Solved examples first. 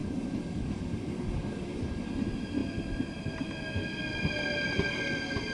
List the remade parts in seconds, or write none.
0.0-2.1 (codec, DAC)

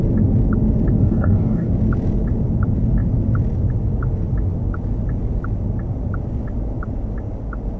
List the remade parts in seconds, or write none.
1.0-1.7 (codec, DAC)

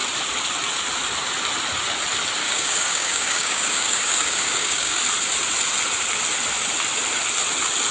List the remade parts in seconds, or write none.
2.4-5.0 (codec, DAC)

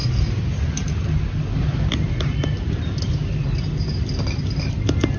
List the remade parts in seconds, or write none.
none

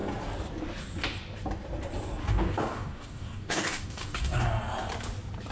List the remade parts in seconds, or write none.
2.2-4.4 (codec, DAC)

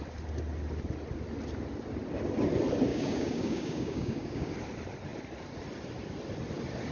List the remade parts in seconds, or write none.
2.9-4.5 (codec, DAC)

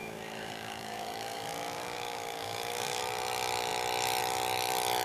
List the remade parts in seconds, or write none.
0.0-3.0 (codec, DAC)